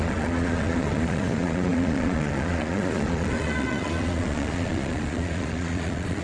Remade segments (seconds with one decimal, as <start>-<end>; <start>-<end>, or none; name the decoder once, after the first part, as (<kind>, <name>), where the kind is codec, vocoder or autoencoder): 0.0-6.2 (vocoder, Vocos)